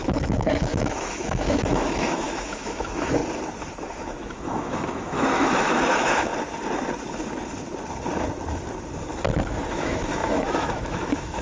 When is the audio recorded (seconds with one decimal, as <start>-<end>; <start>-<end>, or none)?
3.2-3.8; 6.3-9.7